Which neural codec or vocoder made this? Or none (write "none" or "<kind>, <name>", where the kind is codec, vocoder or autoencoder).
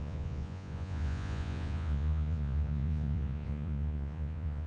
vocoder, Vocos